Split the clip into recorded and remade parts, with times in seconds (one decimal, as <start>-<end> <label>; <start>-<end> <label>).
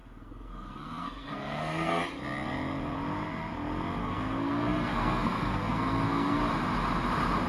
0.0-2.0 remade; 2.0-4.0 recorded; 4.0-6.4 remade; 6.4-7.5 recorded